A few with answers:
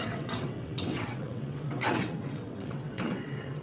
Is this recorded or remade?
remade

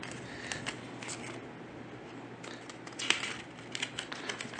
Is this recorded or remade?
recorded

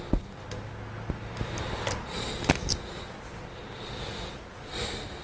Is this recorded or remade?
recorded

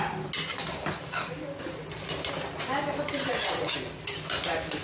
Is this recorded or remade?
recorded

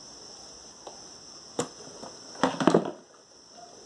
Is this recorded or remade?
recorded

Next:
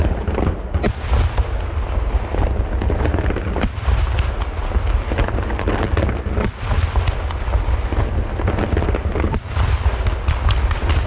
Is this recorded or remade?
recorded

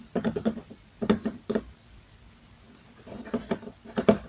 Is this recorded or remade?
recorded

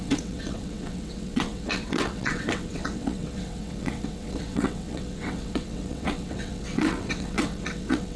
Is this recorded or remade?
remade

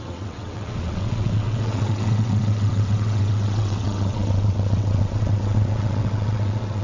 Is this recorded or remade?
remade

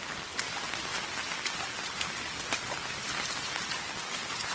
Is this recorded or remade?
recorded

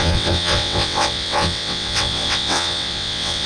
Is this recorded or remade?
remade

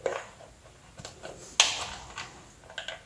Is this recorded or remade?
recorded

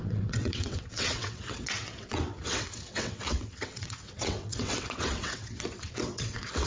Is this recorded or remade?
remade